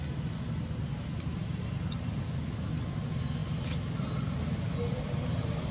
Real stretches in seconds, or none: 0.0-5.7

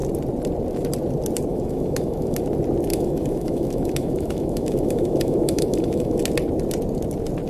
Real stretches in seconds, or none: 0.0-1.5; 2.4-2.9; 6.2-7.5

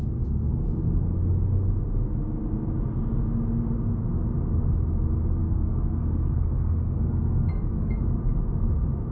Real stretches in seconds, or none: 0.0-5.4; 8.0-9.1